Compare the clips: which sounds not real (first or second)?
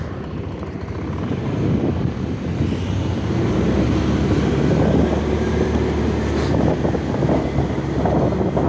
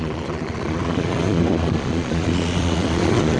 second